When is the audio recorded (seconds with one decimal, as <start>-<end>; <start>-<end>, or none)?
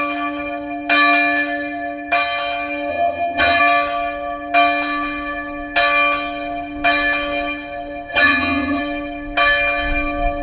0.0-2.9; 3.6-8.1; 8.8-10.4